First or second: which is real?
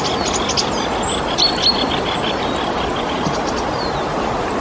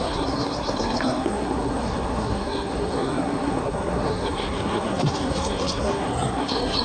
first